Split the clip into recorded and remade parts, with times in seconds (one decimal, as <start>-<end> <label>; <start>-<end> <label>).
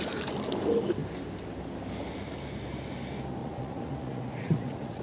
0.0-3.4 recorded; 3.4-5.0 remade